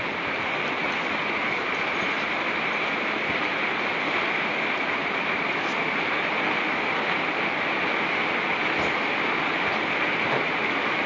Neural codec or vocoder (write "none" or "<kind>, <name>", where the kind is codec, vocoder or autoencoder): none